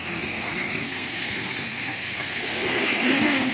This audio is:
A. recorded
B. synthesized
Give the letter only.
B